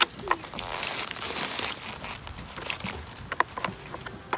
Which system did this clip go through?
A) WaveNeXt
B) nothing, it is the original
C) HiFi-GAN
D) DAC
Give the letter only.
B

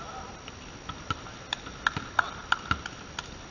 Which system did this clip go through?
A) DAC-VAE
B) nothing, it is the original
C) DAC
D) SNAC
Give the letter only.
B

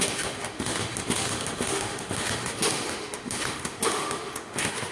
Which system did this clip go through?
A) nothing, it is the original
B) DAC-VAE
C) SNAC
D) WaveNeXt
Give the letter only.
B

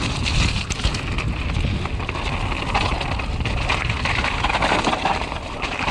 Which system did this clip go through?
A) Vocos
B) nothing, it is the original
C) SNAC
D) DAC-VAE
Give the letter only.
B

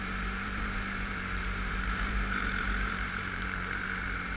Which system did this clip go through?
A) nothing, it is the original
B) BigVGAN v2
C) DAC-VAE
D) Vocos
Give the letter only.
B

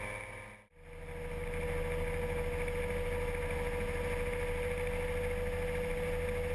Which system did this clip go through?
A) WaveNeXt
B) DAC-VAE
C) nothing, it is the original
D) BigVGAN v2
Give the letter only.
C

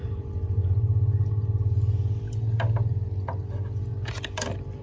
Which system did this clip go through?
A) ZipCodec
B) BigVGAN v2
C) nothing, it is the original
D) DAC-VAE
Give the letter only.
C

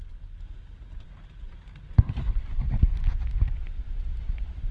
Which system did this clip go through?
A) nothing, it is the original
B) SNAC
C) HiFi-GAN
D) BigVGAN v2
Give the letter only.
D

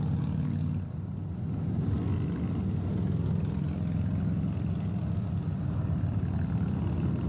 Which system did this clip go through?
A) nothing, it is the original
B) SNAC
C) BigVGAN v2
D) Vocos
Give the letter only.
A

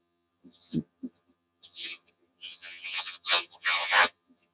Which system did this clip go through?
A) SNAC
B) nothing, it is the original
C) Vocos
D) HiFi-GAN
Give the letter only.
D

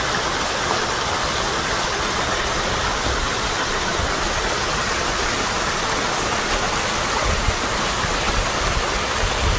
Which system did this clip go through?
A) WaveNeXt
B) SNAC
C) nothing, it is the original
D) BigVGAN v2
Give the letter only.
C